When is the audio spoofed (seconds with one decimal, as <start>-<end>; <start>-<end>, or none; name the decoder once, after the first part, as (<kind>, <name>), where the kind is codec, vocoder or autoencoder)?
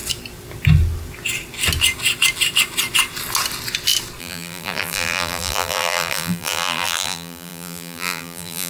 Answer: 4.2-8.7 (vocoder, BigVGAN v2)